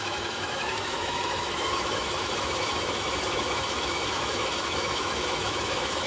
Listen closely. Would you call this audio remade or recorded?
remade